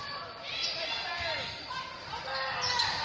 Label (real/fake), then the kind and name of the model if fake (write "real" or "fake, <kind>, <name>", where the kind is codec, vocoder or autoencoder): real